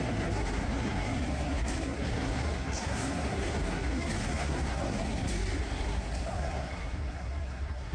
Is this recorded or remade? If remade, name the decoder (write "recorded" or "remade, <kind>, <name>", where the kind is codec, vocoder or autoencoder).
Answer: remade, codec, SNAC